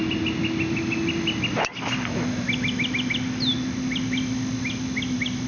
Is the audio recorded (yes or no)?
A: yes